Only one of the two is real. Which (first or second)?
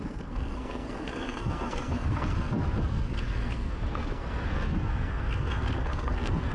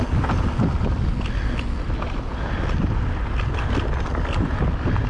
second